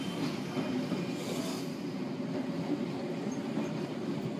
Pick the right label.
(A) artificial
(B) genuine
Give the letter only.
B